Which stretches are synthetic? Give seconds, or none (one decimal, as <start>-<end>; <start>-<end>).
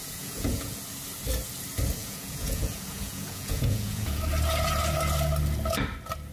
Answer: 0.0-0.8; 2.0-4.2